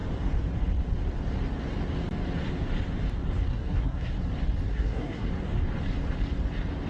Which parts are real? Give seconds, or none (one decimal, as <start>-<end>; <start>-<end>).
0.0-3.5; 4.1-4.7; 5.3-6.9